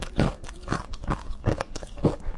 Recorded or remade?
remade